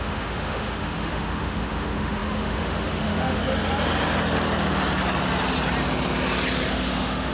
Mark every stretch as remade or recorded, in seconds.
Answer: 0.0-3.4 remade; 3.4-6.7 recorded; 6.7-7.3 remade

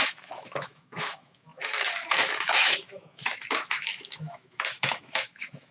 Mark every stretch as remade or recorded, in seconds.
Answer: 0.0-5.7 remade

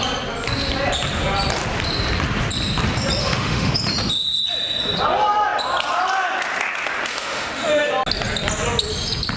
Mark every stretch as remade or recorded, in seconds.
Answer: 0.0-3.2 recorded; 3.2-3.7 remade; 3.7-7.1 recorded; 7.1-7.9 remade; 7.9-9.4 recorded

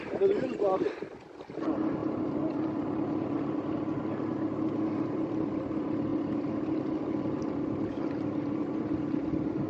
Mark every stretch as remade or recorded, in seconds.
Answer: 0.0-9.7 recorded

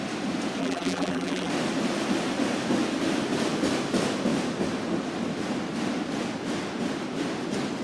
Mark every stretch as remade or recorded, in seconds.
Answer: 0.0-0.6 recorded; 0.6-1.5 remade; 1.5-7.8 recorded

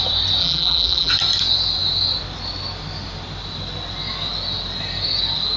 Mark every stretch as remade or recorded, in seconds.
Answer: 0.0-0.4 recorded; 0.4-1.1 remade; 1.1-5.6 recorded

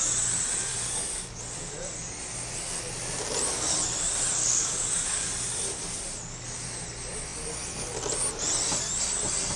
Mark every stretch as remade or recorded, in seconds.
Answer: 0.0-0.7 recorded; 0.7-1.4 remade; 1.4-4.4 recorded; 4.4-5.3 remade; 5.3-9.6 recorded

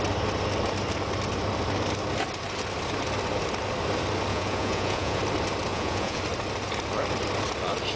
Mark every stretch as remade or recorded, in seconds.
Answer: 0.0-4.3 recorded; 4.3-5.2 remade; 5.2-5.7 recorded; 5.7-6.2 remade; 6.2-8.0 recorded